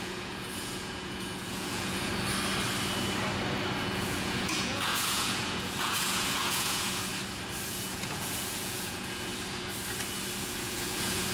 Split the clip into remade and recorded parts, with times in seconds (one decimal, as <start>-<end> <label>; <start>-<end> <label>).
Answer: 0.0-2.1 remade; 2.1-3.8 recorded; 3.8-7.1 remade; 7.1-7.7 recorded; 7.7-9.3 remade; 9.3-10.4 recorded; 10.4-11.3 remade